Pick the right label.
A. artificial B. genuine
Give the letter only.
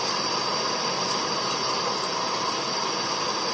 B